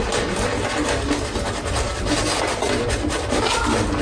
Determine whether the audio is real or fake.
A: real